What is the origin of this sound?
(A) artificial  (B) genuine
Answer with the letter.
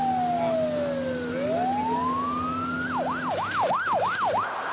B